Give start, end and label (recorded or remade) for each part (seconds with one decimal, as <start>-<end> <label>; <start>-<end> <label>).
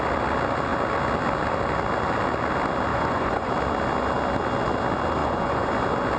0.0-2.9 recorded; 2.9-3.5 remade; 3.5-5.2 recorded; 5.2-5.7 remade; 5.7-6.2 recorded